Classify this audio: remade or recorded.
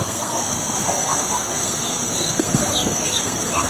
remade